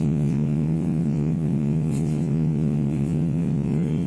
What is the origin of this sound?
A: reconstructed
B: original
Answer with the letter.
A